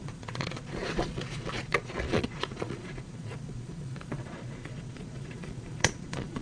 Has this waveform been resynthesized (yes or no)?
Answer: yes